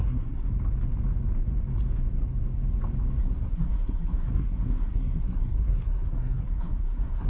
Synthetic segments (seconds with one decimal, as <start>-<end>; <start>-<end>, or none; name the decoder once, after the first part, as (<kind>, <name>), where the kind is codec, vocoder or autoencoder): 0.0-0.5 (codec, SNAC); 3.2-7.3